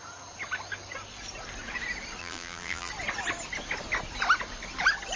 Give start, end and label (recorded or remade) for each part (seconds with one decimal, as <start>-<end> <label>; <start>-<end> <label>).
0.0-2.2 recorded; 2.2-2.9 remade; 2.9-5.2 recorded